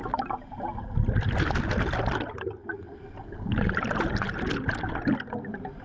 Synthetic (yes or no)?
no